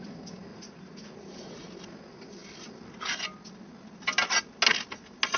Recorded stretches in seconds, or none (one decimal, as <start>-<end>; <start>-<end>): 0.0-0.5; 1.7-5.4

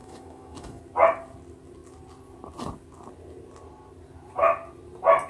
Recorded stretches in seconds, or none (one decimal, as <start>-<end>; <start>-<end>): 0.8-5.3

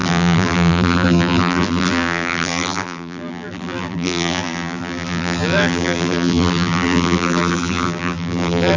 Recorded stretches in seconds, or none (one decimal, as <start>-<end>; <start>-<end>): none

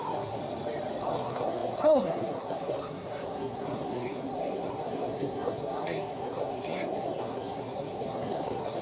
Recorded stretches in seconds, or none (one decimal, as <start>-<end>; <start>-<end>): 0.4-1.1

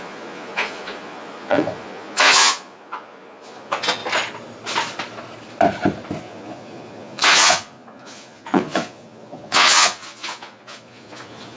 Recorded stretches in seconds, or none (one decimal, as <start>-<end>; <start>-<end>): 4.0-6.2

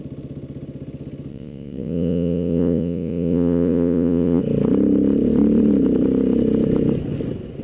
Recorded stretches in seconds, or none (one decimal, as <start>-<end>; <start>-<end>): 0.0-1.3; 4.4-7.6